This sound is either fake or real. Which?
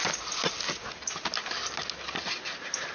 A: real